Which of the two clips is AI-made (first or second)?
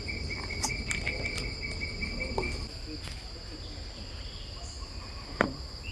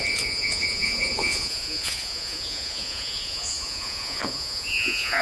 second